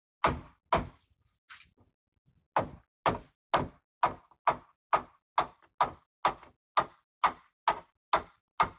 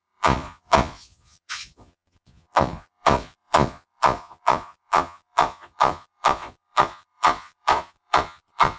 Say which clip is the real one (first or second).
first